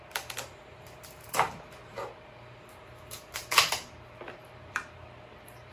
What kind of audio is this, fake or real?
fake